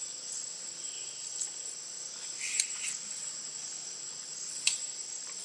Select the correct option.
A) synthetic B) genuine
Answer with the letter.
B